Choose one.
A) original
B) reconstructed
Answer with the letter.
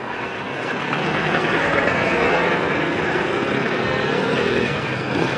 B